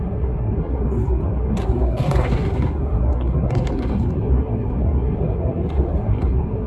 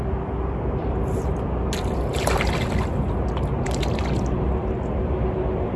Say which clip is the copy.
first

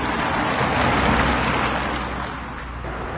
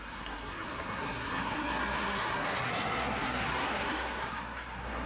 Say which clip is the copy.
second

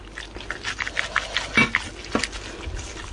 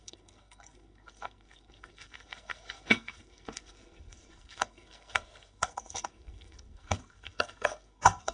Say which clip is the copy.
second